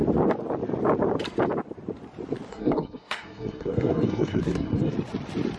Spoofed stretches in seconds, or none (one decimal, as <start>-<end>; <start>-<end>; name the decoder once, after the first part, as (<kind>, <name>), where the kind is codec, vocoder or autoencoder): 2.5-4.9 (codec, SNAC)